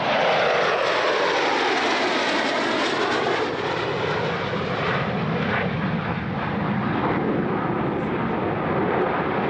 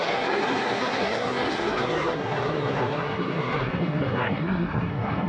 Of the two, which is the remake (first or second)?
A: second